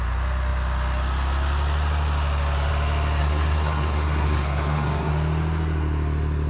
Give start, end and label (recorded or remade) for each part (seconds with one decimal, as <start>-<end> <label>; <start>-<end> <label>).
0.0-3.2 recorded; 3.2-5.1 remade; 5.1-6.5 recorded